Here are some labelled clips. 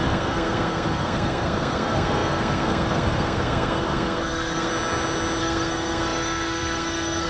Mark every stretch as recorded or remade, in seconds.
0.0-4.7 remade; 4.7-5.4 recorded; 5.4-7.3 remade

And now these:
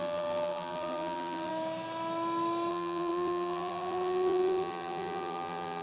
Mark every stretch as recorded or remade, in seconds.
0.0-1.5 remade; 1.5-2.7 recorded; 2.7-5.8 remade

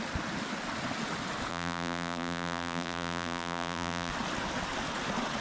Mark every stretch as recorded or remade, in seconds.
0.0-1.5 recorded; 1.5-4.1 remade; 4.1-5.4 recorded